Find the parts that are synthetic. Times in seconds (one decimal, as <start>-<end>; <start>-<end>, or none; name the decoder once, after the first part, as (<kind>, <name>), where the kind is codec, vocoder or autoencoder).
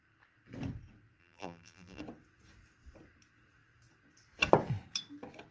1.2-2.0 (vocoder, BigVGAN v2)